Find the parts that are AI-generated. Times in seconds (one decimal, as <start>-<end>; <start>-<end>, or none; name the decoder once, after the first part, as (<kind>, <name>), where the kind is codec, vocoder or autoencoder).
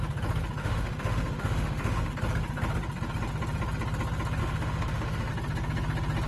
0.6-2.1 (autoencoder, DAC-VAE); 4.4-5.3